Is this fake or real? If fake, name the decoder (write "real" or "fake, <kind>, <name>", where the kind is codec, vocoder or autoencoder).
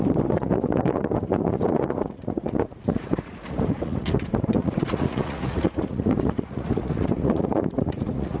fake, vocoder, Vocos